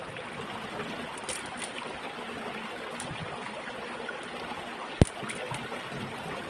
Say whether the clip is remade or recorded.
recorded